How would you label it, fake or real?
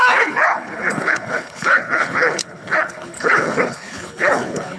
fake